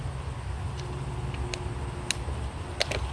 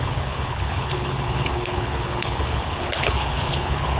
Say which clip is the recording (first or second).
first